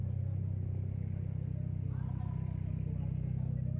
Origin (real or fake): real